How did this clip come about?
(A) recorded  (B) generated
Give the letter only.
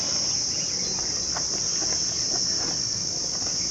A